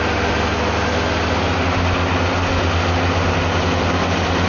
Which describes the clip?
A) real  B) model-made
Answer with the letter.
A